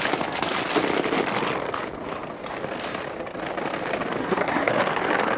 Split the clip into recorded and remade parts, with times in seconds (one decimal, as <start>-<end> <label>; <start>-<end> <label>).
0.0-4.2 recorded; 4.2-4.7 remade; 4.7-5.4 recorded